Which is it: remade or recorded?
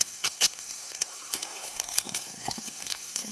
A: remade